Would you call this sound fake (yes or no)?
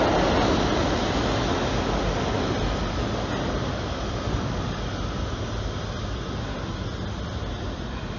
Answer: no